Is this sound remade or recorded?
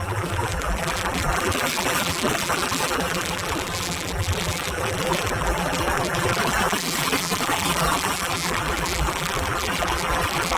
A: remade